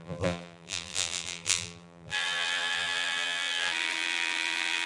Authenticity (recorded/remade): remade